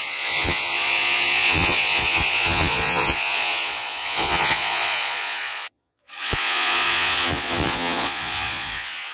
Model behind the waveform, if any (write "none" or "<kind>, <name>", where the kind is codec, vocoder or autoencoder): vocoder, Vocos